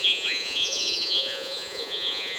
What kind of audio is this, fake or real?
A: fake